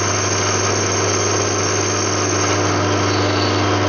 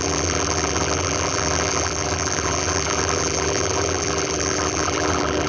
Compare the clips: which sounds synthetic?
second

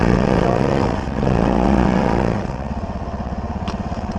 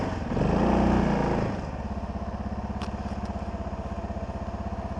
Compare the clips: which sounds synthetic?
first